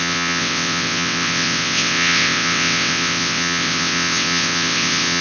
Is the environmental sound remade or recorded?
remade